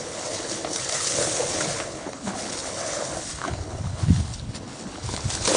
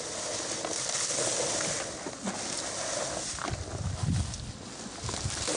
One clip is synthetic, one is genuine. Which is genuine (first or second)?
second